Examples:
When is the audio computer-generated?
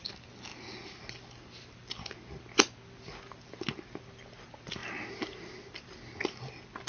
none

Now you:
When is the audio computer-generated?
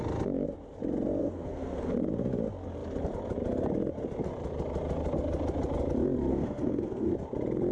1.2-1.9 (codec, SNAC); 6.3-7.1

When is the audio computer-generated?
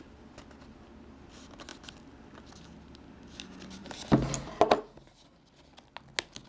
none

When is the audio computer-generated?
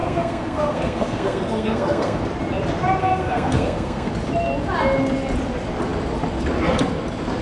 0.0-2.2 (codec, SNAC); 3.0-4.1